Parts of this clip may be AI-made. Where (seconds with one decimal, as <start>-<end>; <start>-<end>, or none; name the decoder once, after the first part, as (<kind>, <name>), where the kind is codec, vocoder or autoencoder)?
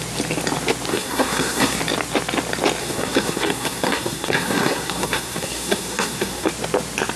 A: 0.9-1.8 (codec, SNAC); 2.8-6.5